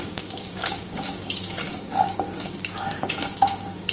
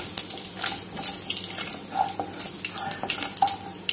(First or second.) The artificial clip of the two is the first